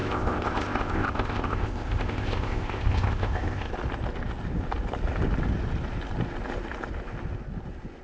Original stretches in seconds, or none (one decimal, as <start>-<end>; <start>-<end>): 3.7-8.0